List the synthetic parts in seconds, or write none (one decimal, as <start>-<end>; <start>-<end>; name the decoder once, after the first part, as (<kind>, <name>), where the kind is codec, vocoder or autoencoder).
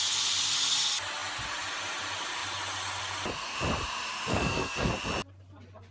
4.3-4.9 (codec, SNAC)